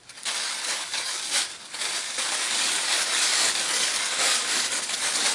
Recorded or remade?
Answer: remade